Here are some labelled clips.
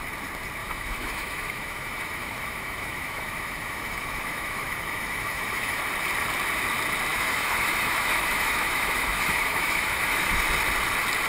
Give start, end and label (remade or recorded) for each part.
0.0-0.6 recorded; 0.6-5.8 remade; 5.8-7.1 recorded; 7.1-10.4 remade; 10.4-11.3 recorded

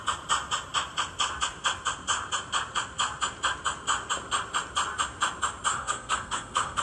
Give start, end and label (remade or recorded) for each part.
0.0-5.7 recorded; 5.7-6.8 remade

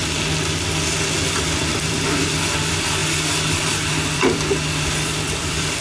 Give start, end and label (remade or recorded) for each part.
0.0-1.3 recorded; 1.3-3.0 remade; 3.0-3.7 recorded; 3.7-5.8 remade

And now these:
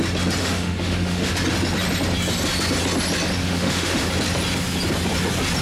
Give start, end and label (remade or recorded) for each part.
0.0-0.4 recorded; 0.4-1.3 remade; 1.3-3.4 recorded; 3.4-4.1 remade; 4.1-5.6 recorded

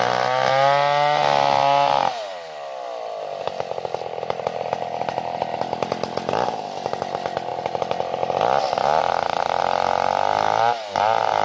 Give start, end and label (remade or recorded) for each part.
0.0-11.4 recorded

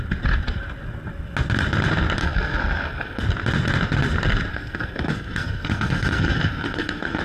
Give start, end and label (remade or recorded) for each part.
0.0-2.2 recorded; 2.2-3.2 remade; 3.2-4.5 recorded; 4.5-7.2 remade

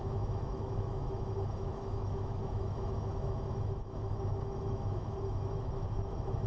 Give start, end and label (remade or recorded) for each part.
0.0-6.5 remade

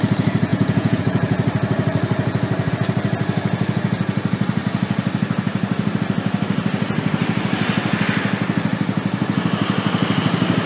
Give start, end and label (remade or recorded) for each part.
0.0-0.5 recorded; 0.5-1.0 remade; 1.0-10.7 recorded